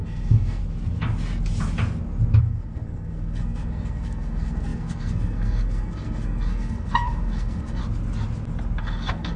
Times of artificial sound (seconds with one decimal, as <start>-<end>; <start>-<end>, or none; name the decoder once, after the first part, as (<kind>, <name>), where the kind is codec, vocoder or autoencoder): 0.0-0.6 (codec, SNAC); 2.4-7.8; 8.8-9.4